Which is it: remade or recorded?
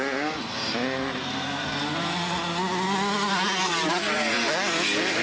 recorded